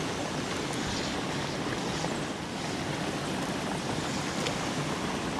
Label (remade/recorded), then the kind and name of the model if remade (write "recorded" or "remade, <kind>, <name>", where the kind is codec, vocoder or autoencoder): recorded